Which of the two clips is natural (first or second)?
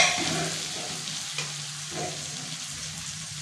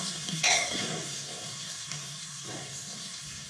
first